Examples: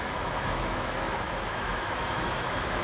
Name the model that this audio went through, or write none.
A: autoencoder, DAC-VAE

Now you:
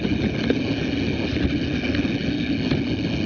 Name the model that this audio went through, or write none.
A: none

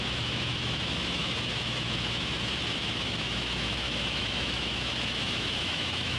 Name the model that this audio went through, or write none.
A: autoencoder, DAC-VAE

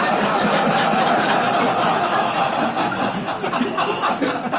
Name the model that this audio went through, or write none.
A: none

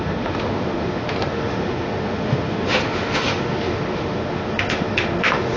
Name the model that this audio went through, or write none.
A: autoencoder, DAC-VAE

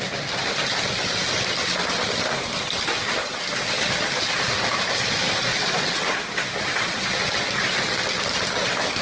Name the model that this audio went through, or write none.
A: none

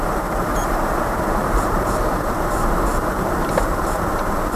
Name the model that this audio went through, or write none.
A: vocoder, BigVGAN v2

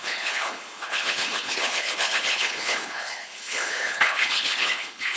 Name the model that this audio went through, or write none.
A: codec, HILCodec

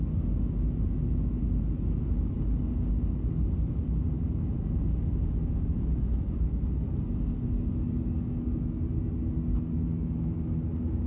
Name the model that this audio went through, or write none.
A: none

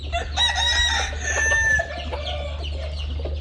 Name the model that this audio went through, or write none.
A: none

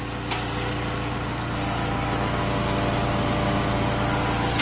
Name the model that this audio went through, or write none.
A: none